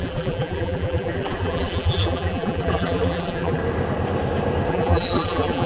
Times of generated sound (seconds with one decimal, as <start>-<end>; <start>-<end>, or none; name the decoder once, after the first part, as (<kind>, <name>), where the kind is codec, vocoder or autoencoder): 0.0-3.6 (vocoder, BigVGAN v2); 4.7-5.7